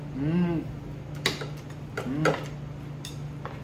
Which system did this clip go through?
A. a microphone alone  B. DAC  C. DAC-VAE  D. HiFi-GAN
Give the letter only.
A